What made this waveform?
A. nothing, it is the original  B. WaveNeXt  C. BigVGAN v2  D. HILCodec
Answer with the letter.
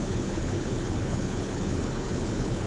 D